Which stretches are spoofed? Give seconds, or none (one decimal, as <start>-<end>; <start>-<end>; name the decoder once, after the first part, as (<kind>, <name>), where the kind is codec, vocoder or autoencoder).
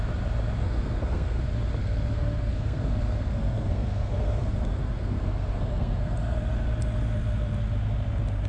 0.6-1.4 (codec, SNAC); 1.8-6.5